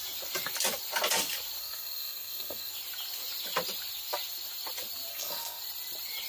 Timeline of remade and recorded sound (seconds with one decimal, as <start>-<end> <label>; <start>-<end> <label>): 0.0-1.6 recorded; 1.6-2.7 remade; 2.7-5.1 recorded; 5.1-5.6 remade; 5.6-6.3 recorded